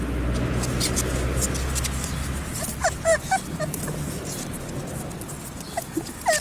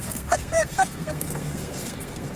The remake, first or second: second